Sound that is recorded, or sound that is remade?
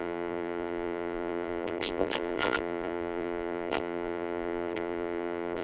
remade